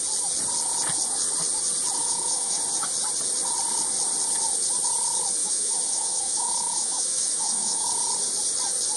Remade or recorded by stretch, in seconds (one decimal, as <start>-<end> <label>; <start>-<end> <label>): 0.0-2.0 recorded; 2.0-2.6 remade; 2.6-5.4 recorded; 5.4-7.9 remade; 7.9-9.0 recorded